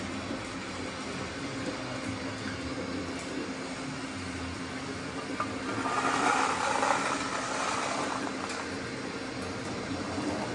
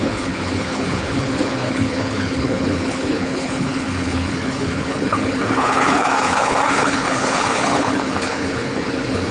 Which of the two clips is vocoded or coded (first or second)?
second